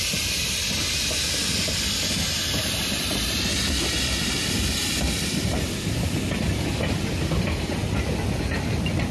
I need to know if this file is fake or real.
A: real